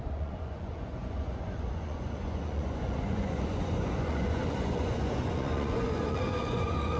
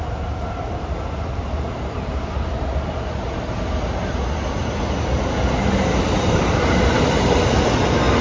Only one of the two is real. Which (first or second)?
second